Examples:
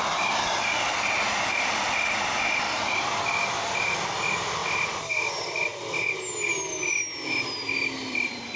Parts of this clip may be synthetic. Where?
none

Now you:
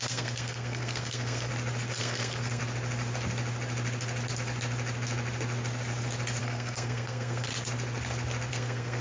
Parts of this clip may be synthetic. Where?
0.0-1.5 (codec, SNAC); 2.0-2.6; 6.4-7.5; 8.5-9.0

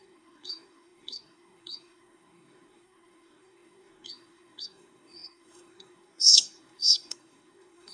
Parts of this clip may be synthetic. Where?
0.0-7.9 (codec, SNAC)

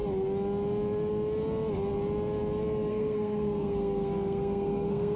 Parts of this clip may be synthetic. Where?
2.9-5.2 (codec, SNAC)

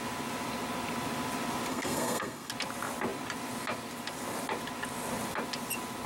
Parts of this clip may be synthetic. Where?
1.7-2.5 (codec, SNAC)